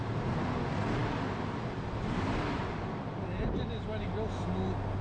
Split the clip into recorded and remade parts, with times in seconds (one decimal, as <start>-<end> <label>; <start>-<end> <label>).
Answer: 0.0-5.0 recorded